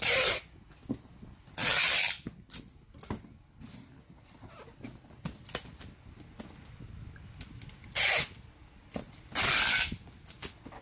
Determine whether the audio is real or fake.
real